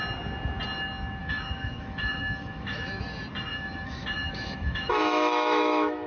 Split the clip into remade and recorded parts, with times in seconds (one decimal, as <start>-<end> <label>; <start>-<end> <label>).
0.0-1.2 recorded; 1.2-3.0 remade; 3.0-3.5 recorded; 3.5-6.1 remade